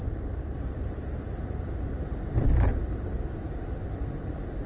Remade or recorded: remade